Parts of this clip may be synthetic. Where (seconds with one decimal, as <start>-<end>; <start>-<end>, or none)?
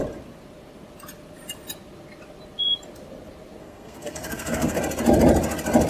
3.6-4.8